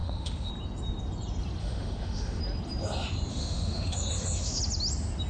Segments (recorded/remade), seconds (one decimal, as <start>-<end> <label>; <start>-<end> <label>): 0.0-0.5 remade; 0.5-1.6 recorded; 1.6-2.4 remade; 2.4-3.3 recorded; 3.3-4.6 remade; 4.6-5.3 recorded